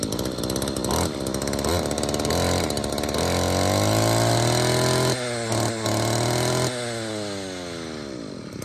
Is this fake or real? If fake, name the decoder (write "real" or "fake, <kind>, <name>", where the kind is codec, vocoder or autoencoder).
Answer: real